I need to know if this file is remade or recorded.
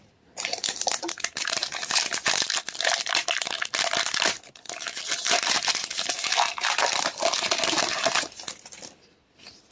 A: recorded